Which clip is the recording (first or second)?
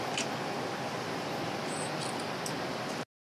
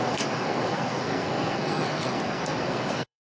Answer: first